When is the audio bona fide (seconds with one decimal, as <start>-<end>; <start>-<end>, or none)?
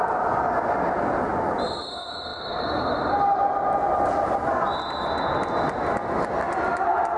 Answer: 0.0-7.2